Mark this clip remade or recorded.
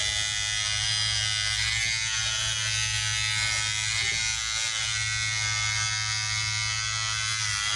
recorded